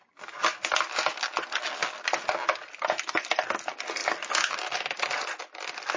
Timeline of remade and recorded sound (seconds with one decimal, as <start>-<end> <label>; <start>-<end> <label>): 0.0-6.0 recorded